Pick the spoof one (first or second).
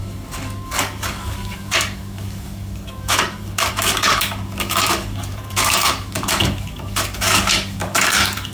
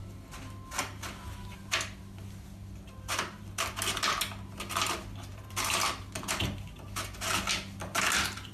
first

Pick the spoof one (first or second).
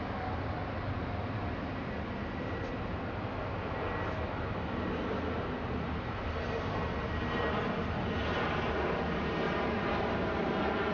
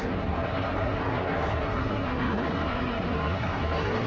second